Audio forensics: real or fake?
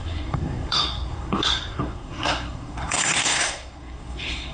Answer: fake